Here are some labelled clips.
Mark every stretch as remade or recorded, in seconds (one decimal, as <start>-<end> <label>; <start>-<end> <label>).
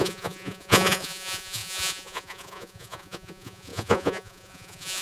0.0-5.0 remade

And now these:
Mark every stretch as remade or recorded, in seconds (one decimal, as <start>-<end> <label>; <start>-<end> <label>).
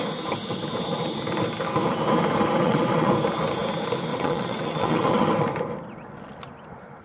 0.0-2.6 recorded; 2.6-3.1 remade; 3.1-4.1 recorded; 4.1-5.3 remade; 5.3-7.0 recorded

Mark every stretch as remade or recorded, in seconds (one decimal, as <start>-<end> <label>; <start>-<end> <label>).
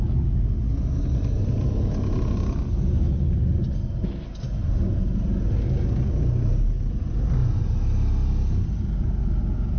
0.0-9.8 recorded